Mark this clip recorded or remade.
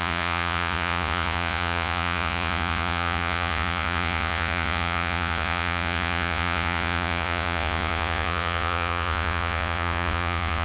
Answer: remade